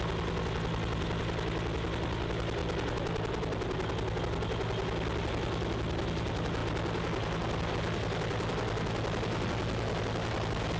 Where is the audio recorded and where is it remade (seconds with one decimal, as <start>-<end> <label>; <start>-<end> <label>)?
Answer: 0.0-10.8 recorded